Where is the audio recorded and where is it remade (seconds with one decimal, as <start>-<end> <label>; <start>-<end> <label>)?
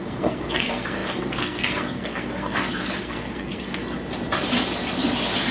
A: 0.0-3.8 remade; 3.8-5.5 recorded